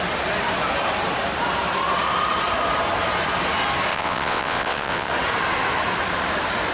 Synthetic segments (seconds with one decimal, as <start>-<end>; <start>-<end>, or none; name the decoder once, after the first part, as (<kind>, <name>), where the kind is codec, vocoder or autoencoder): 3.9-5.1 (vocoder, WaveNeXt)